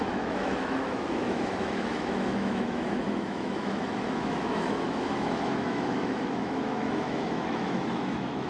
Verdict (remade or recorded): remade